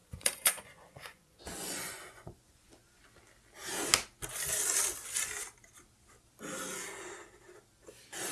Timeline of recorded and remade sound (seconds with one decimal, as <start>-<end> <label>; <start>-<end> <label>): 0.0-3.0 remade; 3.0-8.3 recorded

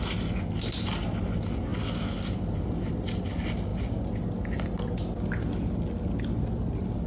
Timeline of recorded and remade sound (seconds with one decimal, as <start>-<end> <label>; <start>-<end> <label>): 0.0-7.1 recorded

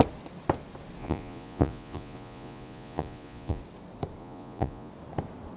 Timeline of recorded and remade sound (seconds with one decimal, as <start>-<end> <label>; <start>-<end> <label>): 0.0-1.0 recorded; 1.0-3.6 remade; 3.6-4.2 recorded; 4.2-4.9 remade; 4.9-5.6 recorded

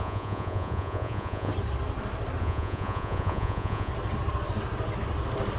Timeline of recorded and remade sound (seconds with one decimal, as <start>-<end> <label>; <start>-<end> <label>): 0.0-1.5 remade; 1.5-2.4 recorded; 2.4-3.9 remade; 3.9-5.6 recorded

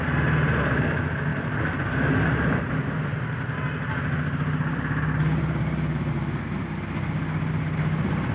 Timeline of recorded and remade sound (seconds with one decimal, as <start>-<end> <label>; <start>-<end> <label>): 0.0-8.3 recorded